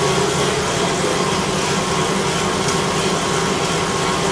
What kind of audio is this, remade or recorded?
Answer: recorded